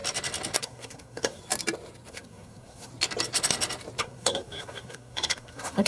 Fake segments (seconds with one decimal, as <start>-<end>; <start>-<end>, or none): 0.6-1.4; 2.1-2.9; 4.0-5.9